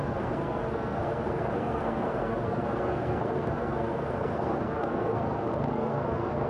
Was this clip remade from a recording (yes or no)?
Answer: yes